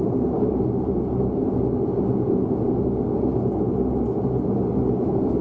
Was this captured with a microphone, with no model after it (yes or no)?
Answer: yes